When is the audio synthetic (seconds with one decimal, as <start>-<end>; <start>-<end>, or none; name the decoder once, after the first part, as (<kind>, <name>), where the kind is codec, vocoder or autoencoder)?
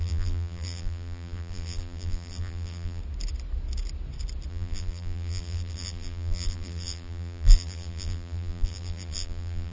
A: 0.0-3.0 (vocoder, BigVGAN v2); 4.5-9.7